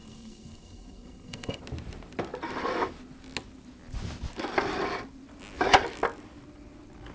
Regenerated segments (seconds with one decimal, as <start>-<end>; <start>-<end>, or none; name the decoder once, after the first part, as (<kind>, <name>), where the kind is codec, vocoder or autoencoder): 0.0-1.6 (codec, SNAC)